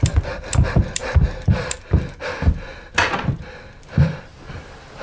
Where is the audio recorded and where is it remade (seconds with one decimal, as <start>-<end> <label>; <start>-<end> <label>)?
0.0-5.0 recorded